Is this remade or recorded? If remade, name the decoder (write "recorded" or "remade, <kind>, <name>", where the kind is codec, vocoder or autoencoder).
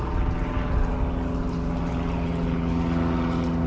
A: recorded